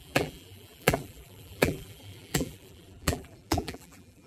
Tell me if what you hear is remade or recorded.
remade